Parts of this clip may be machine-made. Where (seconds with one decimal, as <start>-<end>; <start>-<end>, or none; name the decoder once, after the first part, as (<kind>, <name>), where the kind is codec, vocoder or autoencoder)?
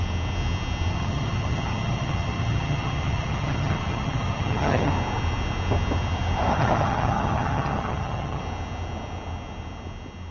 0.9-4.9 (vocoder, HiFi-GAN); 6.5-8.4